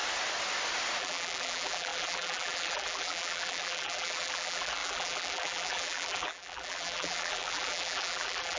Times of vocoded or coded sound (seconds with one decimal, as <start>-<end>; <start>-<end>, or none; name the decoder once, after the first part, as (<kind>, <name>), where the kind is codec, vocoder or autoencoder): 1.0-8.6 (vocoder, BigVGAN v2)